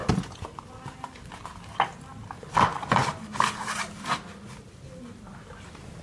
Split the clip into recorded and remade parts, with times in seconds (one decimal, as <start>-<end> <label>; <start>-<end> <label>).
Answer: 0.0-3.0 recorded; 3.0-4.9 remade; 4.9-6.0 recorded